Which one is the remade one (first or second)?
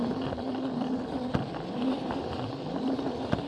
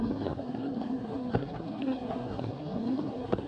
second